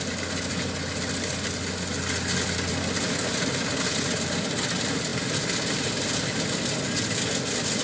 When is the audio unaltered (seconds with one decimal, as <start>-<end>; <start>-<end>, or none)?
0.0-7.8